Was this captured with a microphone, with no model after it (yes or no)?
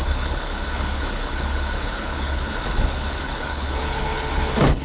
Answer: no